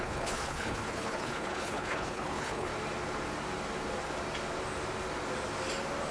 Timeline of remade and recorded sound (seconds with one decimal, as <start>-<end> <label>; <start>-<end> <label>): 0.0-2.7 remade; 2.7-6.1 recorded